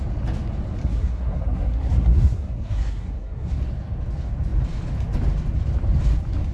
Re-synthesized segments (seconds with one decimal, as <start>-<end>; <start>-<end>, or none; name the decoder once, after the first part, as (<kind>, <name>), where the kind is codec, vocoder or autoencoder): 0.8-3.6 (codec, SNAC)